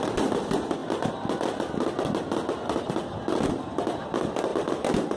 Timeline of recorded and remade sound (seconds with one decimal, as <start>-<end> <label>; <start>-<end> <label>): 0.0-5.2 recorded